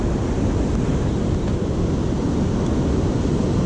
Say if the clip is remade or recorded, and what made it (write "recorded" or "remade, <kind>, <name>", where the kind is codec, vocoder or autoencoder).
recorded